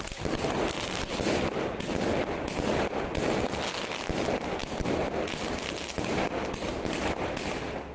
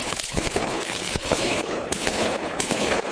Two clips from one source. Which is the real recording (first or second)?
first